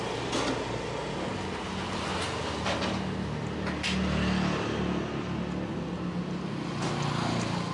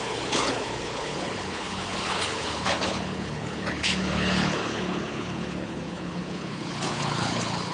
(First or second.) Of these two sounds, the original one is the first